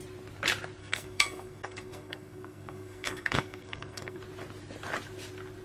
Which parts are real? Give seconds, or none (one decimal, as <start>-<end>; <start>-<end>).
0.0-0.8; 4.2-5.6

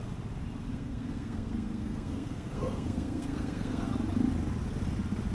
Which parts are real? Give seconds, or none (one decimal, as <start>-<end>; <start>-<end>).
0.0-0.7; 3.9-5.3